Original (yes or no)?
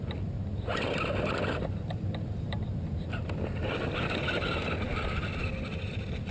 yes